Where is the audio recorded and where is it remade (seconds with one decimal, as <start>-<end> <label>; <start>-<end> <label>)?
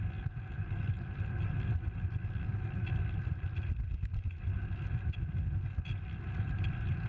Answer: 0.0-7.1 recorded